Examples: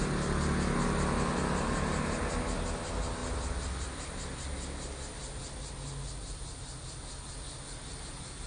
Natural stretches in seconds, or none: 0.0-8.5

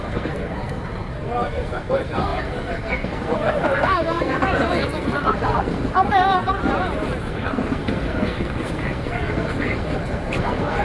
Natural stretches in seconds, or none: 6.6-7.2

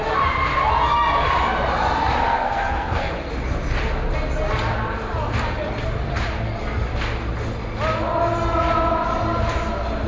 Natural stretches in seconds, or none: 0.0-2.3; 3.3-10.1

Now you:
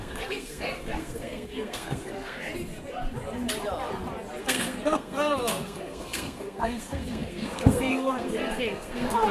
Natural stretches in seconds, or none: 2.5-4.4